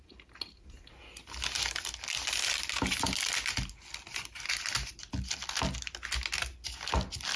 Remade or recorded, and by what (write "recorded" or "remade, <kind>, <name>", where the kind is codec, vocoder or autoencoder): recorded